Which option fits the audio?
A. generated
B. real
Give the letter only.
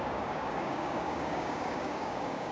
A